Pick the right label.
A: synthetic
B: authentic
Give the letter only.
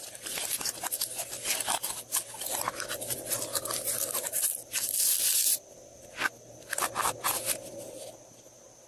B